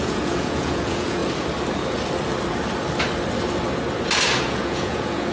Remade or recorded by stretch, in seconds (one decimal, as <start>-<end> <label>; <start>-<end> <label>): 0.0-1.2 remade; 1.2-4.4 recorded; 4.4-5.3 remade